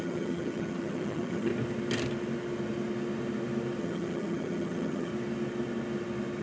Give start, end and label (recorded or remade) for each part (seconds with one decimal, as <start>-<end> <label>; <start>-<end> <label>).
0.0-1.5 remade; 1.5-3.8 recorded; 3.8-5.1 remade; 5.1-6.4 recorded